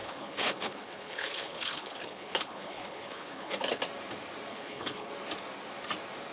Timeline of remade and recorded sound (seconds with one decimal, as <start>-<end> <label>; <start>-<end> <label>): 0.0-3.8 remade; 3.8-4.5 recorded; 4.5-5.1 remade; 5.1-6.3 recorded